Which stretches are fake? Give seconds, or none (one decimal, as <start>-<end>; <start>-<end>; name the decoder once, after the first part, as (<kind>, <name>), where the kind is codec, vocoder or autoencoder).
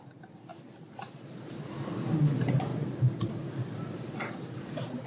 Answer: none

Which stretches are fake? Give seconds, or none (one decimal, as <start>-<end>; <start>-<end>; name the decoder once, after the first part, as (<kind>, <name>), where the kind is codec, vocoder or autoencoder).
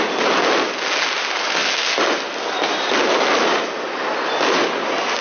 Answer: none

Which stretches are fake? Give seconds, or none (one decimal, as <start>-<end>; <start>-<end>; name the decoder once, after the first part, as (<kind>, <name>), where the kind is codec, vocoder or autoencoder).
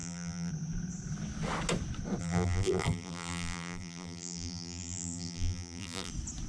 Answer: 0.0-0.5 (vocoder, BigVGAN v2); 2.2-6.1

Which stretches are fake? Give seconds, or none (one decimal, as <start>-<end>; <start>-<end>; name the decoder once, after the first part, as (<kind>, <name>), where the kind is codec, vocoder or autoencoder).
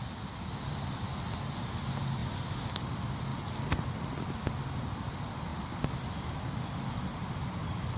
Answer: 2.2-2.7 (vocoder, BigVGAN v2); 3.3-4.5; 5.5-8.0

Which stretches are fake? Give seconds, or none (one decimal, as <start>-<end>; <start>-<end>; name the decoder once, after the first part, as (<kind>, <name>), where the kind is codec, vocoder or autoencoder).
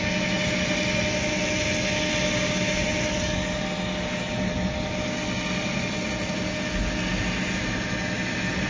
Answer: none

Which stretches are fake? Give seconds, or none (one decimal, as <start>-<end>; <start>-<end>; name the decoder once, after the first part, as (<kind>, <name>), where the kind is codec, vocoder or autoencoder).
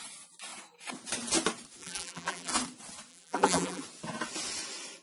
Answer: 1.8-2.5 (vocoder, BigVGAN v2); 3.1-3.8